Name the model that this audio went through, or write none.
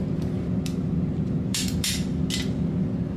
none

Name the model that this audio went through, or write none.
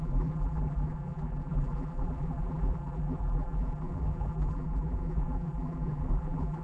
vocoder, BigVGAN v2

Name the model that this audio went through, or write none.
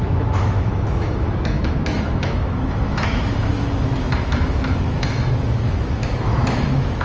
autoencoder, DAC-VAE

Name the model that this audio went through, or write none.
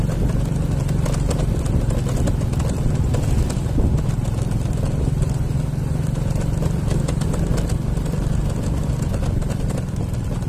none